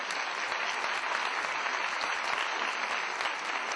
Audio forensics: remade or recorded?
recorded